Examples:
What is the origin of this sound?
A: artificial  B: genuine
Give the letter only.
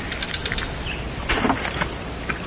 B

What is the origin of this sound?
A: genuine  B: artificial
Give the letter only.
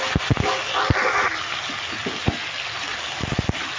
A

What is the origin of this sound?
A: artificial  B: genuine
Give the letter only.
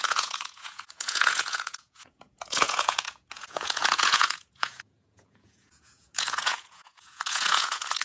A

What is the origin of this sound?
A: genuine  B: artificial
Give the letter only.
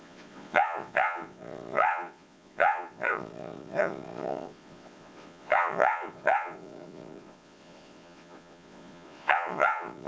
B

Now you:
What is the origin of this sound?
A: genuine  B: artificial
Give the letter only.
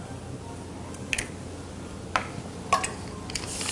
A